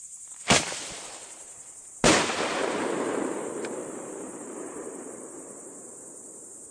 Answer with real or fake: fake